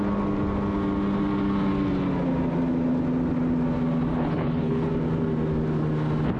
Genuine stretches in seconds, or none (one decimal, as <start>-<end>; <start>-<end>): 0.0-4.1; 4.9-6.4